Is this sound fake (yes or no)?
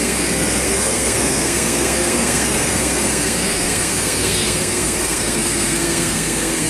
yes